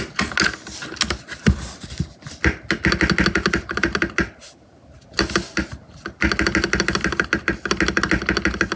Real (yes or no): yes